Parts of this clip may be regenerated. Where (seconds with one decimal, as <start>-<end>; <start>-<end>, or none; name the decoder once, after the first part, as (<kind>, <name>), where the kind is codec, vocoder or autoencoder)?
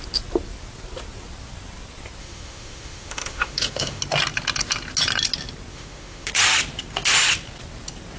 2.2-4.0 (autoencoder, DAC-VAE); 5.7-6.3